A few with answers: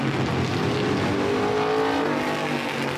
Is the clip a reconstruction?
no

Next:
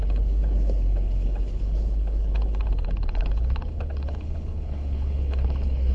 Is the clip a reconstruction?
yes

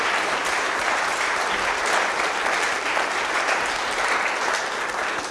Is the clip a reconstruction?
yes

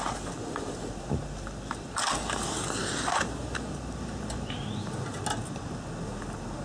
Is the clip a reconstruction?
no